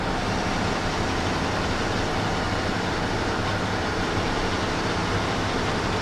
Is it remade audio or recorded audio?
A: recorded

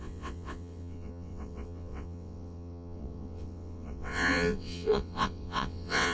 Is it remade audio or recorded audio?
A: remade